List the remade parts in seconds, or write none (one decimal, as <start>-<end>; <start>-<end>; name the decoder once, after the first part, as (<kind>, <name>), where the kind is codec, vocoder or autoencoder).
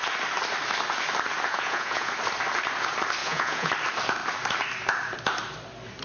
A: 1.5-2.1 (vocoder, Vocos); 3.2-3.7